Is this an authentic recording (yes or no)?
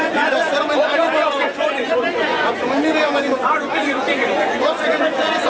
no